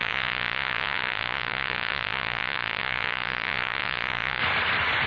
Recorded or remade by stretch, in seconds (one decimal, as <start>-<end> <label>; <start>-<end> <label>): 0.0-4.4 remade; 4.4-5.1 recorded